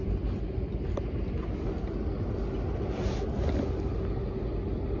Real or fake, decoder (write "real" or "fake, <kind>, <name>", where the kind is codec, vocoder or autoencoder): real